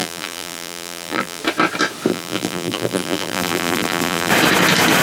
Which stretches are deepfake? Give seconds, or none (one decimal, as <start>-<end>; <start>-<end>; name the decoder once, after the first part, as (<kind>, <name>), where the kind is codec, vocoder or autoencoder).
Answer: 0.0-1.4 (vocoder, BigVGAN v2); 2.1-4.3